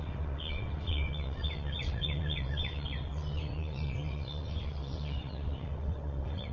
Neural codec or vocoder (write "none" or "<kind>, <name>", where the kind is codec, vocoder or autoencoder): vocoder, WaveNeXt